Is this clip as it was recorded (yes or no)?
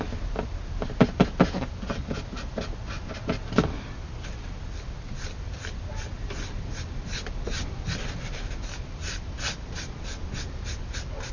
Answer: yes